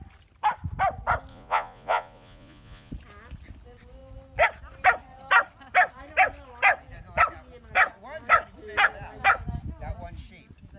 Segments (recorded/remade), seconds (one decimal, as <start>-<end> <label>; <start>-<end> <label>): 0.0-1.3 recorded; 1.3-2.9 remade; 2.9-10.8 recorded